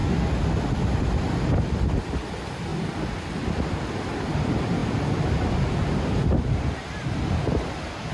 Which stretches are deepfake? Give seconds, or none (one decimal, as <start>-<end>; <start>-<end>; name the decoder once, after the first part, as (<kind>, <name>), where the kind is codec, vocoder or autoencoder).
1.0-2.7 (vocoder, BigVGAN v2); 3.2-8.1